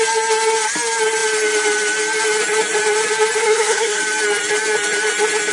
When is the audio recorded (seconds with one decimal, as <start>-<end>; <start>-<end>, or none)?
0.0-3.4; 4.0-5.5